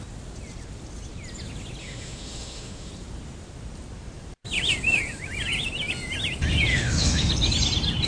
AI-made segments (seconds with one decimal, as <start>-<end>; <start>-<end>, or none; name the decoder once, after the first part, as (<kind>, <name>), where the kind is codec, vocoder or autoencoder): 1.8-2.9 (autoencoder, DAC-VAE); 6.7-7.3